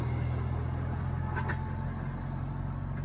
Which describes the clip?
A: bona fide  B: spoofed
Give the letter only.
A